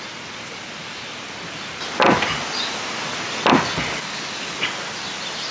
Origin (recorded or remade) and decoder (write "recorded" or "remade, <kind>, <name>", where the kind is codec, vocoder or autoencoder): recorded